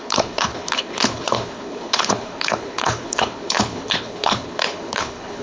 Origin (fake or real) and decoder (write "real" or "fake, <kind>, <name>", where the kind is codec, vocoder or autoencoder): fake, codec, HILCodec